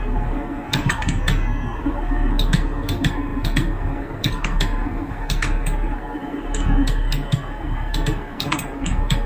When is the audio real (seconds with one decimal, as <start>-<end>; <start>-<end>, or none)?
none